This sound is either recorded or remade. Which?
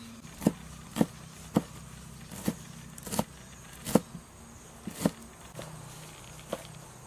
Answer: recorded